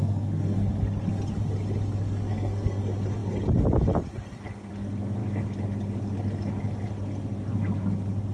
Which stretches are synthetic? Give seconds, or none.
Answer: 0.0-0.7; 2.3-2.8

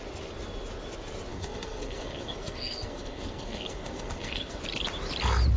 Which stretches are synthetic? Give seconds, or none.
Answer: 1.3-4.6

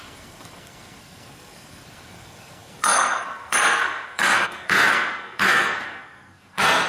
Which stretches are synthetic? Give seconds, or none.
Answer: 0.0-6.9

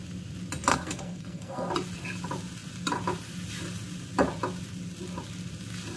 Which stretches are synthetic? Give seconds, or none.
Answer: 0.7-1.7

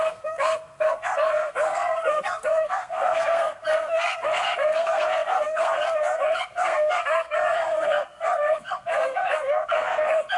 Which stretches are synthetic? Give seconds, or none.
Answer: 0.0-10.4

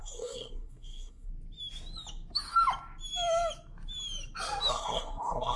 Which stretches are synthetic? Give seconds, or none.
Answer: 0.0-1.3; 4.7-5.6

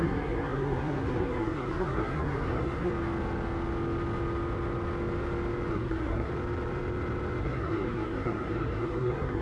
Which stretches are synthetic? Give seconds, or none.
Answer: 0.0-2.9; 5.7-6.3; 7.4-9.4